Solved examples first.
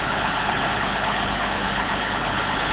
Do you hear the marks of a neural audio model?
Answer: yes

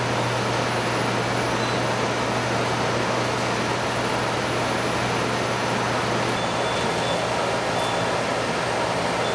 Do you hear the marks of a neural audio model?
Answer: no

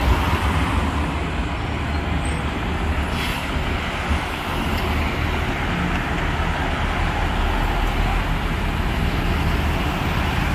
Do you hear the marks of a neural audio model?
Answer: no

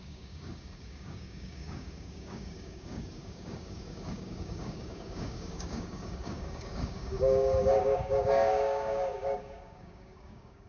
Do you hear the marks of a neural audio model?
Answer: yes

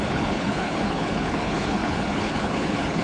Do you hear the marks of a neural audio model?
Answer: yes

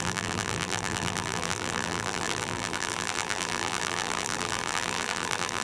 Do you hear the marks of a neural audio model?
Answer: yes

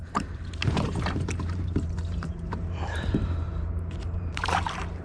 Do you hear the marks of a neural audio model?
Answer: yes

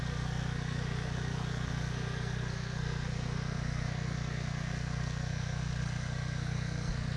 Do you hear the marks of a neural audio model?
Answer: yes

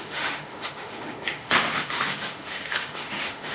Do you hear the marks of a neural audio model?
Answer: yes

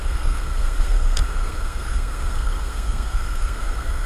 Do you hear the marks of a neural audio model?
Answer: yes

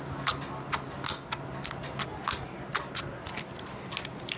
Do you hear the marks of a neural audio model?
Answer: no